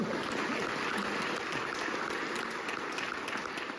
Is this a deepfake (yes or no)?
no